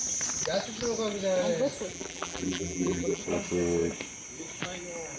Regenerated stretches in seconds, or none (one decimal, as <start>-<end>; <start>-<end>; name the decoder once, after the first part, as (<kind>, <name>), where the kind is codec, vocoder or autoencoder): 1.9-3.2 (vocoder, BigVGAN v2)